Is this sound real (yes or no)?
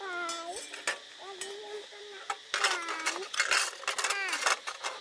yes